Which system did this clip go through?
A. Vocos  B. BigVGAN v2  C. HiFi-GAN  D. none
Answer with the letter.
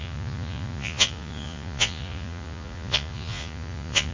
A